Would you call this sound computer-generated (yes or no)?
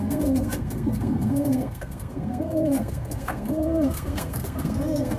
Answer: yes